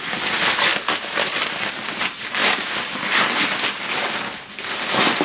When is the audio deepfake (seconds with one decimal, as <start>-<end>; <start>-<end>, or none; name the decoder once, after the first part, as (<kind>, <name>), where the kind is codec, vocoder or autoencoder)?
2.4-3.0 (vocoder, BigVGAN v2)